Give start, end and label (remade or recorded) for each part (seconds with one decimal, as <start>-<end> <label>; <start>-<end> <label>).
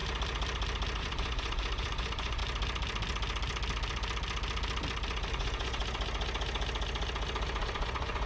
0.0-1.0 recorded; 1.0-2.4 remade; 2.4-5.3 recorded; 5.3-5.8 remade; 5.8-7.6 recorded; 7.6-8.3 remade